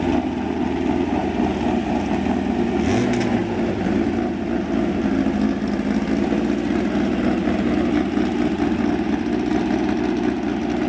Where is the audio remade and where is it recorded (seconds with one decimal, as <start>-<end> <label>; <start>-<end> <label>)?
0.0-3.4 recorded; 3.4-4.1 remade; 4.1-7.4 recorded; 7.4-9.8 remade; 9.8-10.9 recorded